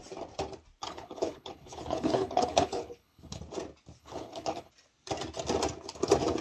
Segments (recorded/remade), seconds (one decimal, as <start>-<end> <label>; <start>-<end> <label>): 0.0-0.8 recorded; 0.8-3.4 remade; 3.4-4.0 recorded; 4.0-4.7 remade; 4.7-6.4 recorded